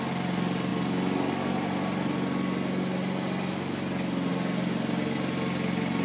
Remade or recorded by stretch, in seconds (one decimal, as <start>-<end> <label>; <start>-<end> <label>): 0.0-6.0 recorded